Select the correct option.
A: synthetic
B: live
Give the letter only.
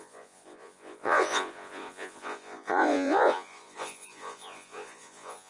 A